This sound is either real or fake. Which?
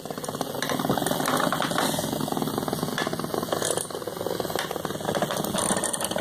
real